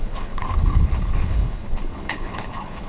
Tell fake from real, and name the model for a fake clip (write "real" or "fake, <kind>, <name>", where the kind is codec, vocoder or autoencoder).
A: fake, codec, HILCodec